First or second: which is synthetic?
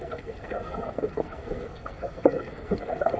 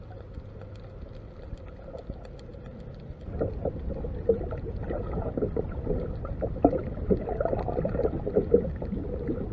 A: first